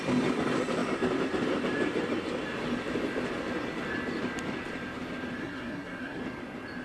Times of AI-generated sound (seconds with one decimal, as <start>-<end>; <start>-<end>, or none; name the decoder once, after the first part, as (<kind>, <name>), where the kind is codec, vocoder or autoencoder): 5.4-6.2 (codec, SNAC)